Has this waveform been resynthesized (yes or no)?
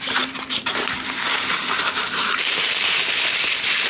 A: yes